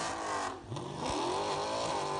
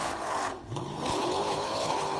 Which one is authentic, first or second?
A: first